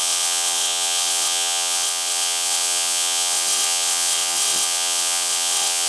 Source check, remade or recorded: remade